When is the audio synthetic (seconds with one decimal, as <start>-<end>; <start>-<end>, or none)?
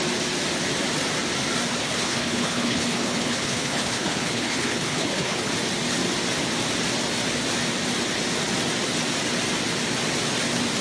1.8-5.5